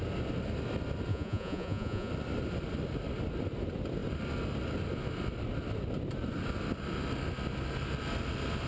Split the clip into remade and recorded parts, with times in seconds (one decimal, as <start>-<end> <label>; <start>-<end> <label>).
0.0-1.1 recorded; 1.1-2.1 remade; 2.1-8.7 recorded